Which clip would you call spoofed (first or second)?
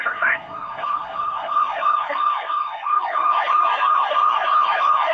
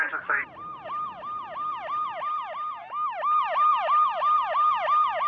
first